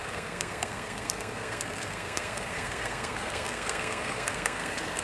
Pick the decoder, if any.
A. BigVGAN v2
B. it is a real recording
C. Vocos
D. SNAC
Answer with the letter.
D